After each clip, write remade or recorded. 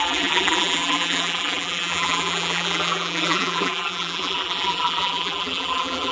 remade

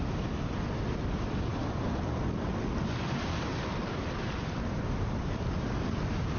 recorded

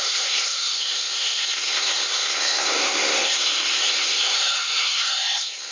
remade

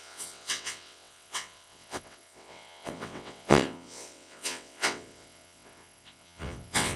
remade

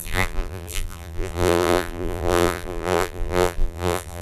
remade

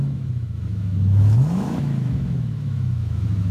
remade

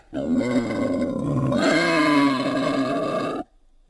recorded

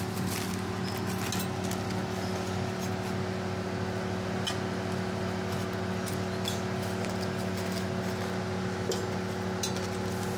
recorded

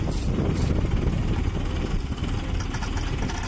recorded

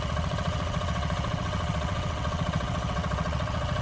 remade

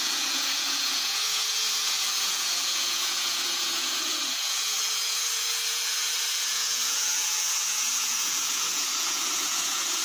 remade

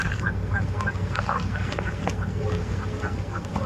remade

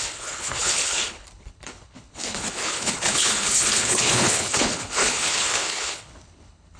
remade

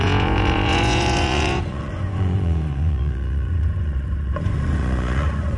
remade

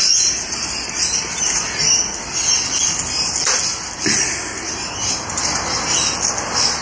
recorded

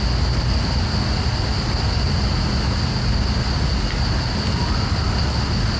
recorded